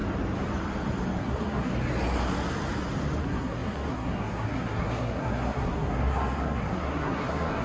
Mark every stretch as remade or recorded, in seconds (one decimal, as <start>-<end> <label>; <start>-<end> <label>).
0.0-1.2 recorded; 1.2-1.7 remade; 1.7-3.2 recorded; 3.2-7.6 remade

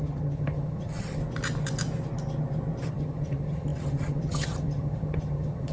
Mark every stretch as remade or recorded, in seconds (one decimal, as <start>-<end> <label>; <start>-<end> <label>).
0.0-1.2 remade; 1.2-2.9 recorded; 2.9-5.7 remade